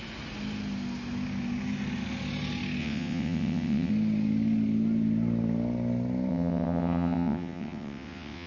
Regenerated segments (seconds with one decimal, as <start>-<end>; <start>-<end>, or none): 2.8-3.9; 6.3-8.5